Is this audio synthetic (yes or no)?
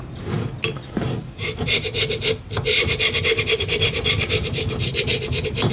yes